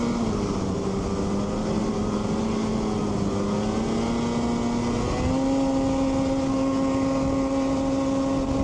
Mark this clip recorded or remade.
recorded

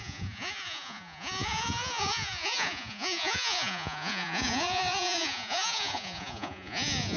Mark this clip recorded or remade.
remade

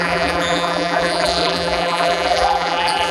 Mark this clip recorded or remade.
remade